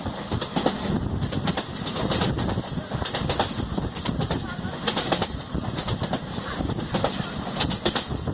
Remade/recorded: recorded